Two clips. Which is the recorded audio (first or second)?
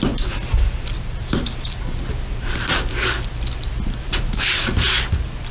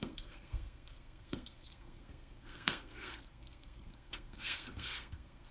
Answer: first